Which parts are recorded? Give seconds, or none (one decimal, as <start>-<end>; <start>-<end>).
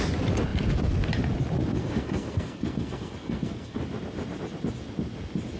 0.0-1.8; 3.8-5.6